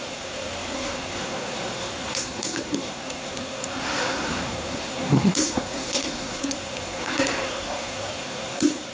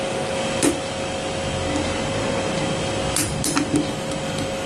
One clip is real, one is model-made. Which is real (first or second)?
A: second